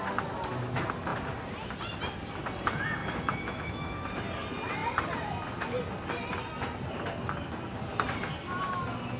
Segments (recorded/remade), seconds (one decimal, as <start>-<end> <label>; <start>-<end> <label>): 0.0-3.0 recorded; 3.0-4.2 remade; 4.2-9.2 recorded